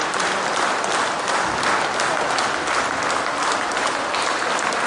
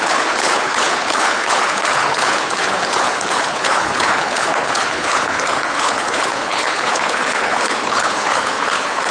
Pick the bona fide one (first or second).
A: first